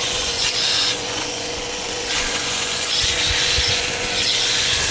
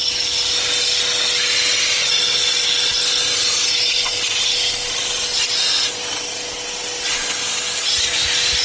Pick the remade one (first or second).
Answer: first